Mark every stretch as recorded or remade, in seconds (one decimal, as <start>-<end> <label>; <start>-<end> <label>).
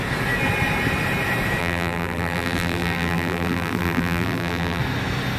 0.0-1.6 recorded; 1.6-4.8 remade; 4.8-5.4 recorded